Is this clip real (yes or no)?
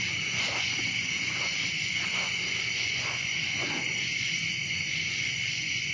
no